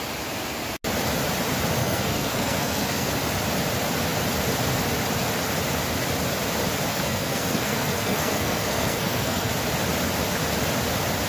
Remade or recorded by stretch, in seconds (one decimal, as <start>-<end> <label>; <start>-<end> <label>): 0.0-1.8 recorded; 1.8-3.1 remade; 3.1-6.9 recorded; 6.9-9.5 remade; 9.5-11.3 recorded